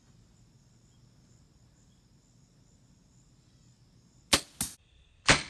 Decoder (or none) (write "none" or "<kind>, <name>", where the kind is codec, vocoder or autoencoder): none